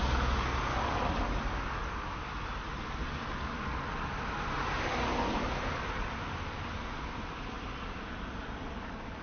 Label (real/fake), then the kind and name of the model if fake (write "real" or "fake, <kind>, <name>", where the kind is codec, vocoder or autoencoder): real